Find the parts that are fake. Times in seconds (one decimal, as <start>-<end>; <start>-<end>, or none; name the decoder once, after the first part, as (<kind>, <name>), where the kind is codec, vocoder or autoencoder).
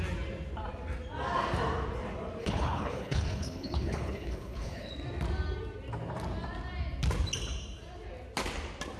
2.4-4.9 (codec, HILCodec)